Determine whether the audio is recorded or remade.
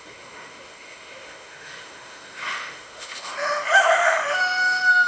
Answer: remade